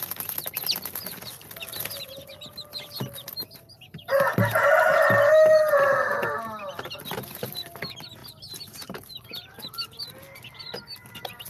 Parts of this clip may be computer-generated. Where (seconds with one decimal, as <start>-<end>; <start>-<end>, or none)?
8.2-9.6